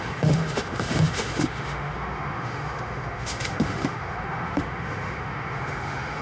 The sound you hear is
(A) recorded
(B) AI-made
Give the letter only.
B